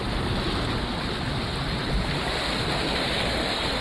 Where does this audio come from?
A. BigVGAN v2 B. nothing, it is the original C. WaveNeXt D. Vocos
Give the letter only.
B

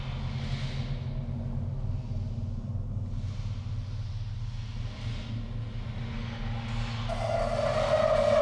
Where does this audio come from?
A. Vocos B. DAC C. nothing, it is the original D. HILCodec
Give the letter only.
C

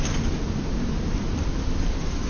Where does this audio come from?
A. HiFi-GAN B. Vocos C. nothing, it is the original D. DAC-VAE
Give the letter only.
C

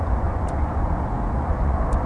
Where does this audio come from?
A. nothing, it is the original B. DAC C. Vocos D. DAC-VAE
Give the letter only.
C